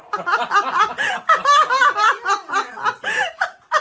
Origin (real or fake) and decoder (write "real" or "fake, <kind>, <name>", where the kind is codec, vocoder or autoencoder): real